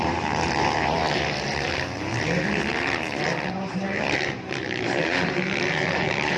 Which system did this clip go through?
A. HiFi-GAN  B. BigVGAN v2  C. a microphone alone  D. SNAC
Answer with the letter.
B